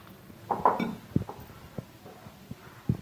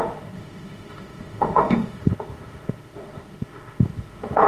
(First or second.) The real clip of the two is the first